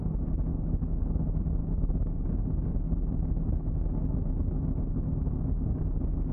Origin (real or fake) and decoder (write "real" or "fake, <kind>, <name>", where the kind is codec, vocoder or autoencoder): real